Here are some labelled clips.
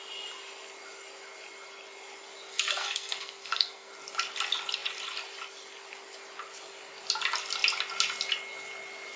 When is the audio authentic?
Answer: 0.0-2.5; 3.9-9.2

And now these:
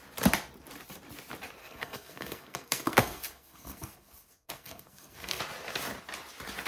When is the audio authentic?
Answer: 0.0-1.6; 5.4-6.7

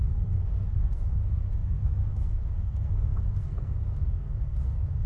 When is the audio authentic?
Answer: none

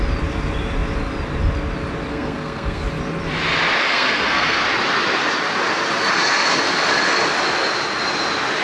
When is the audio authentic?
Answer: 0.0-2.1; 2.8-3.9; 4.6-8.6

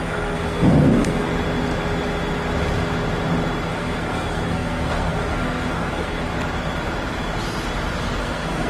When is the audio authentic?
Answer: 1.3-3.7; 6.3-8.2